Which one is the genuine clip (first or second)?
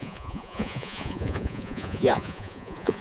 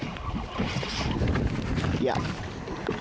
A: second